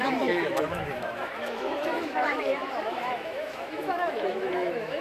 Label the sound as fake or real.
fake